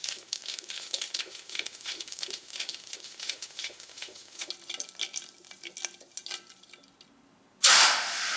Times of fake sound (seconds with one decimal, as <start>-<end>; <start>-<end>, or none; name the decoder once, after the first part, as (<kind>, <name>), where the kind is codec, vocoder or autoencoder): 0.0-4.5 (autoencoder, DAC-VAE)